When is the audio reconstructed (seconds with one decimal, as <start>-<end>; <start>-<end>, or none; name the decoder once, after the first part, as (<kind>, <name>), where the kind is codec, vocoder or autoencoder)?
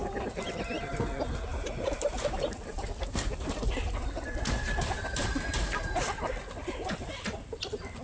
none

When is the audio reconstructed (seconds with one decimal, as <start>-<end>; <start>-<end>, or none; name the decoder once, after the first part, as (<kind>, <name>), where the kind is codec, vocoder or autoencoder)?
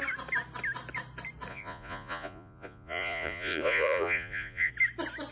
1.5-4.7 (vocoder, Vocos)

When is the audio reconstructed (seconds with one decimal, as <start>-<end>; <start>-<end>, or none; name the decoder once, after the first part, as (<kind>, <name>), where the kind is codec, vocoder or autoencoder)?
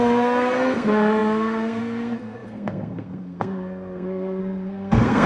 0.0-5.3 (codec, SNAC)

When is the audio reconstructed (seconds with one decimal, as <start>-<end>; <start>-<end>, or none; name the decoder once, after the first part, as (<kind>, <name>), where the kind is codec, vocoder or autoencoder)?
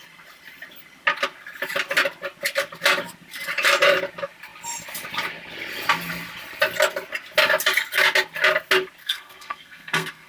9.0-10.3 (codec, SNAC)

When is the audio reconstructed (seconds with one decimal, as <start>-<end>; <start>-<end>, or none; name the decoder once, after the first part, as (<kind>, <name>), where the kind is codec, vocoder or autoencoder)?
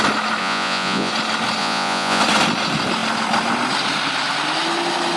0.4-1.1 (vocoder, Vocos); 1.6-2.2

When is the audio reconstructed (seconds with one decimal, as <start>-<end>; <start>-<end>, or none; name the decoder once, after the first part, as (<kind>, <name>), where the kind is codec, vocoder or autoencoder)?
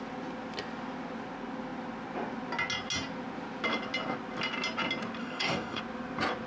5.2-5.8 (codec, DAC)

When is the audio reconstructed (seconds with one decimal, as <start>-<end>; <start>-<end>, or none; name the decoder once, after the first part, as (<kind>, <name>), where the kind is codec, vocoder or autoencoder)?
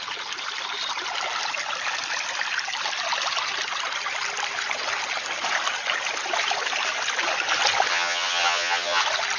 7.9-9.0 (vocoder, HiFi-GAN)